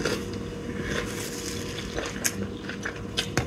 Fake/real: real